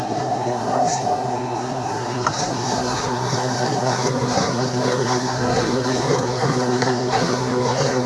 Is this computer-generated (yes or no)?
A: yes